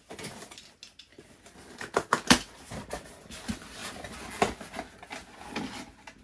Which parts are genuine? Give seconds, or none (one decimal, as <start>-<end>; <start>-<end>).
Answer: 0.0-6.2